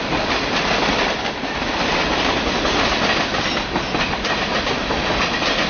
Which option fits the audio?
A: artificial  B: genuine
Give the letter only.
B